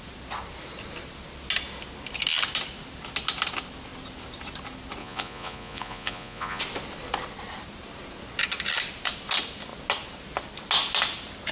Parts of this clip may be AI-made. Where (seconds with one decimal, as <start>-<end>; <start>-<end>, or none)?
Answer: 5.0-6.6